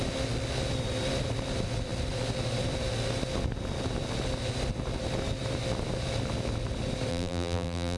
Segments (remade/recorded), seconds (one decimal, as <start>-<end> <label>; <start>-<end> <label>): 0.0-7.1 recorded; 7.1-8.0 remade